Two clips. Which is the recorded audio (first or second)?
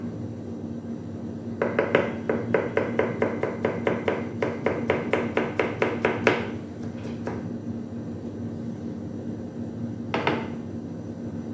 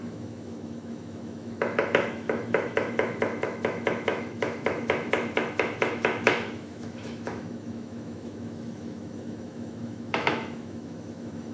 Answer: first